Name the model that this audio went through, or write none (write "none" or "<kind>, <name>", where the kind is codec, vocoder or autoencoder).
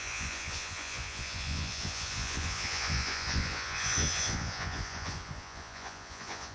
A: vocoder, Vocos